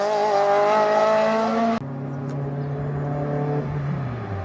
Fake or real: real